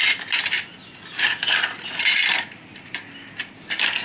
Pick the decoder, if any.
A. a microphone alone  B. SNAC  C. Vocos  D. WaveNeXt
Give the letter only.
A